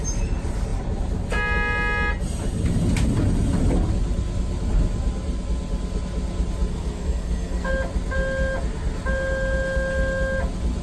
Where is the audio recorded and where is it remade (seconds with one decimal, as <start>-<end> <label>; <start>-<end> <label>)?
0.0-6.7 recorded; 6.7-7.7 remade; 7.7-10.8 recorded

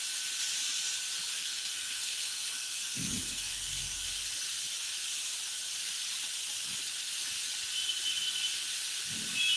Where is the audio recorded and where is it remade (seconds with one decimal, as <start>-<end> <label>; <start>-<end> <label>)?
0.0-1.4 recorded; 1.4-4.1 remade; 4.1-9.6 recorded